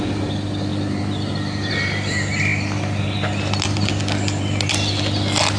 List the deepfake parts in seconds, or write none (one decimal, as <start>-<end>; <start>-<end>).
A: none